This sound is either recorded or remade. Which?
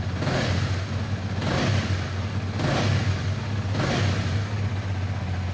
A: recorded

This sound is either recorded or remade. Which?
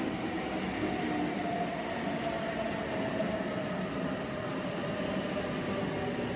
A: recorded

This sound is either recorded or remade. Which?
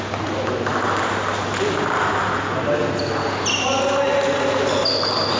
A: recorded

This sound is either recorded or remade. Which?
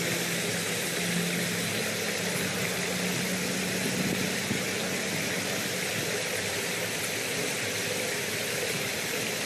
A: recorded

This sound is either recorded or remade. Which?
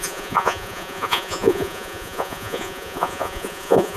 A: remade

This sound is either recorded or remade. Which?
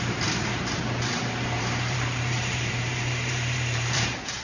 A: remade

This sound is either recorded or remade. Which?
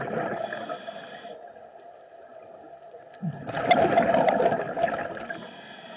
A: recorded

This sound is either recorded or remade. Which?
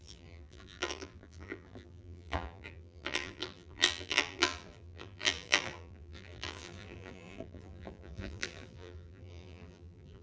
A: remade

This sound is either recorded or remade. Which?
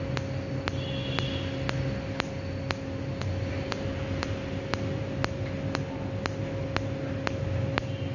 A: recorded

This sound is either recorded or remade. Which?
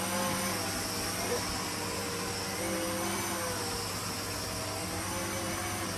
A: recorded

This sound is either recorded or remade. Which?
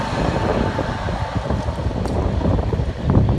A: recorded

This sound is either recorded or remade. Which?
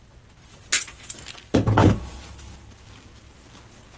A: recorded